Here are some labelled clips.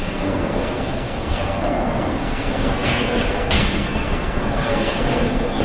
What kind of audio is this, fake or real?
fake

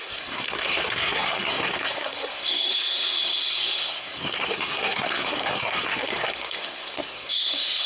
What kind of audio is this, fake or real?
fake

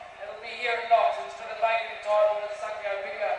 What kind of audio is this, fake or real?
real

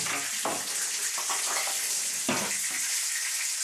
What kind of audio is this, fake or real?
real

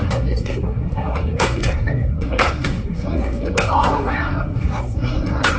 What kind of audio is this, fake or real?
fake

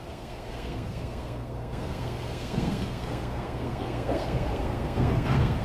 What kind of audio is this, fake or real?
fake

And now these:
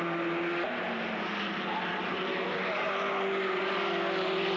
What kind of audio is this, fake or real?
real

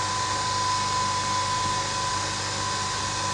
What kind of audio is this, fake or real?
real